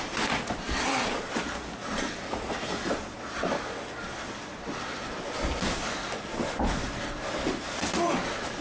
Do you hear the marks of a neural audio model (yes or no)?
no